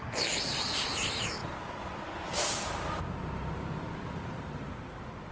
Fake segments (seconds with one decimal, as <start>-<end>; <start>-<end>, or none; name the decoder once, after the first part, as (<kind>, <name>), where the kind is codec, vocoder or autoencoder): 0.6-1.4 (vocoder, BigVGAN v2); 3.0-5.3